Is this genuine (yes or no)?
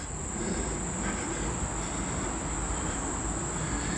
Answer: yes